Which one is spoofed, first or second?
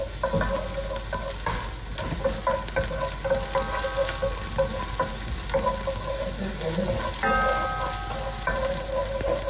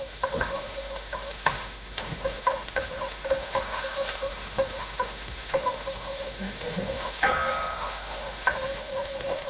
second